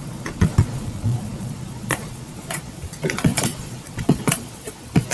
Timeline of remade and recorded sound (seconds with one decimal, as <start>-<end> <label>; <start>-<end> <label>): 0.0-5.1 remade